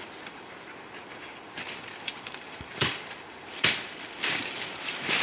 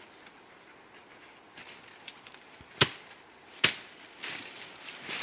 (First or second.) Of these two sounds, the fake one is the first